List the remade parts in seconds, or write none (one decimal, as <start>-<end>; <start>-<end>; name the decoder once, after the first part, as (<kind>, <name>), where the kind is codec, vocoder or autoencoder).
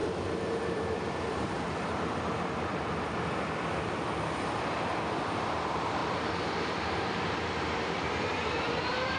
0.6-2.7 (vocoder, BigVGAN v2); 5.5-9.2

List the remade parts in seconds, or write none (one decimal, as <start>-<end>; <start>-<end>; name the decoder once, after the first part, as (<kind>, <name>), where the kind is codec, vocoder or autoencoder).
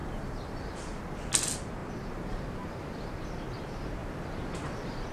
0.0-1.0 (vocoder, BigVGAN v2); 4.0-5.1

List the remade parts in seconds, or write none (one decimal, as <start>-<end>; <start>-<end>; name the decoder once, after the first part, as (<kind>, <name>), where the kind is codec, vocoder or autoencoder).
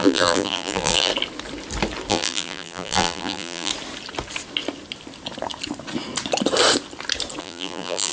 0.0-1.1 (vocoder, BigVGAN v2); 2.1-3.7; 7.4-8.1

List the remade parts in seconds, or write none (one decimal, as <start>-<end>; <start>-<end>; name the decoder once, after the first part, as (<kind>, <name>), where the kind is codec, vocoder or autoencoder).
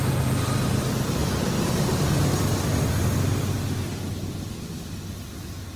none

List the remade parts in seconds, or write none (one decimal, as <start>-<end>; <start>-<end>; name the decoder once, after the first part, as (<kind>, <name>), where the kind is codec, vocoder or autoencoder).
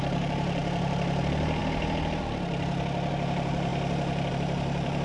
0.0-1.6 (vocoder, BigVGAN v2); 3.1-3.7; 4.3-5.0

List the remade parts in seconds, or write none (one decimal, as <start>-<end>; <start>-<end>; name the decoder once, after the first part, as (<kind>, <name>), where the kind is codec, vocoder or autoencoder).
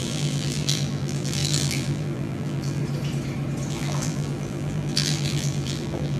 0.0-2.8 (vocoder, BigVGAN v2); 3.7-6.2